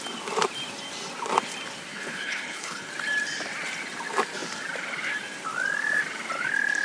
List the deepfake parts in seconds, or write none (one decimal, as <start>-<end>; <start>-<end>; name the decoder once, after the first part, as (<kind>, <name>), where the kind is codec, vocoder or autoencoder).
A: 1.9-2.9 (codec, HILCodec)